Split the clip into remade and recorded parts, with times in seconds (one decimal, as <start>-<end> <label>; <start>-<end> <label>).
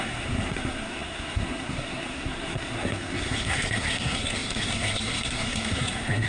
0.0-6.3 remade